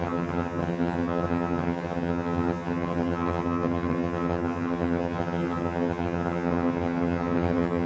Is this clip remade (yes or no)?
yes